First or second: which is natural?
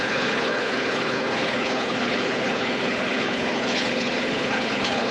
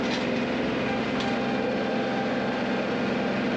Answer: second